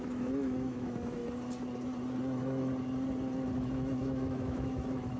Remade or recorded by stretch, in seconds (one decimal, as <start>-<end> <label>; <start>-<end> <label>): 0.0-1.2 remade; 1.2-2.2 recorded; 2.2-2.7 remade; 2.7-3.6 recorded; 3.6-5.2 remade